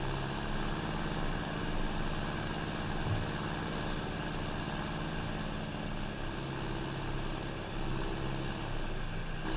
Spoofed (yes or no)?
no